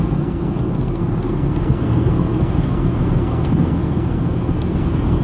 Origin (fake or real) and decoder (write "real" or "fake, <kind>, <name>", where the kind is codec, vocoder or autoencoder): fake, codec, SNAC